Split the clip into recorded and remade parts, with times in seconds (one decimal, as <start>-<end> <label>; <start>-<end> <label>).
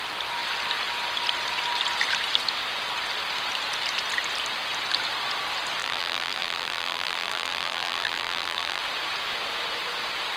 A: 0.0-5.8 recorded; 5.8-8.8 remade; 8.8-10.4 recorded